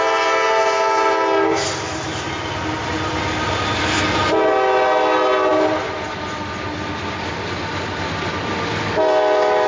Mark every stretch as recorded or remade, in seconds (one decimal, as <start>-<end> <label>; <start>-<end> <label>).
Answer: 0.0-9.7 recorded

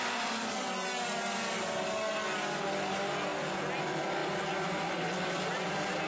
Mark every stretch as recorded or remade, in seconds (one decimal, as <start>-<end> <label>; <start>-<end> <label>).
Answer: 0.0-6.1 recorded

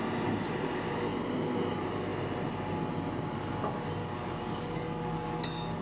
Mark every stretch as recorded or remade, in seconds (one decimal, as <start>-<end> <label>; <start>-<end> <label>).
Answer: 0.0-4.0 recorded; 4.0-5.8 remade

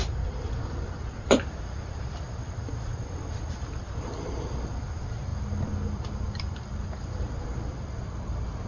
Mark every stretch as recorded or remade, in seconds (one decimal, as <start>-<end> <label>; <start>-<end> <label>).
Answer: 0.0-8.7 recorded

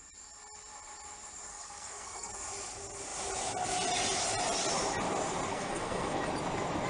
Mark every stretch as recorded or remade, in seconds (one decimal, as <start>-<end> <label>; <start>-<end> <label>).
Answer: 0.0-1.5 recorded; 1.5-2.3 remade; 2.3-5.5 recorded; 5.5-6.2 remade; 6.2-6.9 recorded